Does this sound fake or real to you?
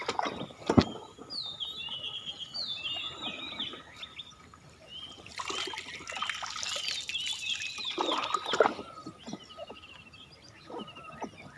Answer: real